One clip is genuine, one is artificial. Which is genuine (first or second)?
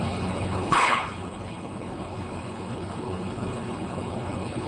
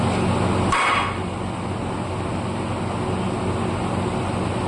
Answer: second